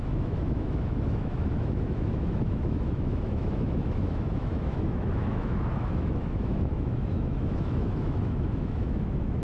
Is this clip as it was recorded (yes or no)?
no